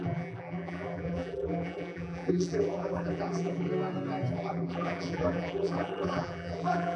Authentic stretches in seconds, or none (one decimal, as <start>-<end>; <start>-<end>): 3.7-4.3